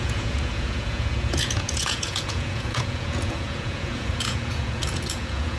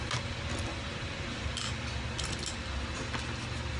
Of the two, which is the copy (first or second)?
first